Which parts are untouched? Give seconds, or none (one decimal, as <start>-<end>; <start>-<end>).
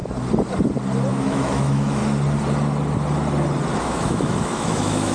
0.0-1.1; 2.0-3.8